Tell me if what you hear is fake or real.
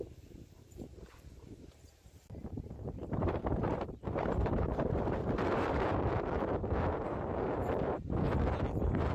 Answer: fake